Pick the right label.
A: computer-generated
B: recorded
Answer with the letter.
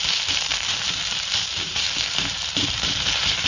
A